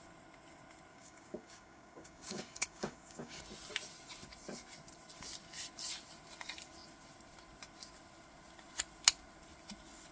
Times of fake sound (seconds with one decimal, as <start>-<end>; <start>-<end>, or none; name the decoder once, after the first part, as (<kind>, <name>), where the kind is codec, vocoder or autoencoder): 0.9-3.4 (codec, DAC)